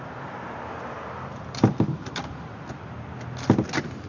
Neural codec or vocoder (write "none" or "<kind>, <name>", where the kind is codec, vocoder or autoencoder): none